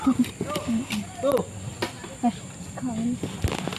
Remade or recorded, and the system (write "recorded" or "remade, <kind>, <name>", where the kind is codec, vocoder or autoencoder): recorded